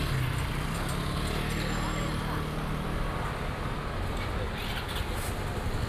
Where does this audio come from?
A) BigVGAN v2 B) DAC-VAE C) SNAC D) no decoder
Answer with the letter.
D